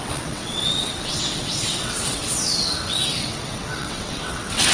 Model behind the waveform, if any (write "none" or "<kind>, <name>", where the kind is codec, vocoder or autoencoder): vocoder, WaveNeXt